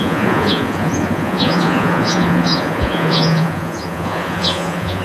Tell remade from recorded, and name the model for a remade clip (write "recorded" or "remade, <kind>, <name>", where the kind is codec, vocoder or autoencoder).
remade, vocoder, Vocos